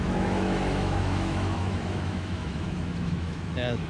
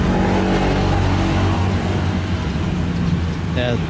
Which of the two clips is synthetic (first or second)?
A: first